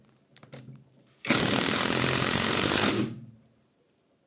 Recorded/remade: remade